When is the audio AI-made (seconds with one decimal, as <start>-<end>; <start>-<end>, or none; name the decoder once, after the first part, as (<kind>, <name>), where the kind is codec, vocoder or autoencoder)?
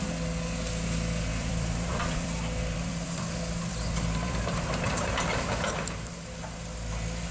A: 1.3-5.4 (vocoder, BigVGAN v2)